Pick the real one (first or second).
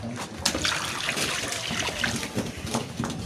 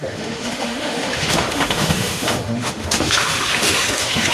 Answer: first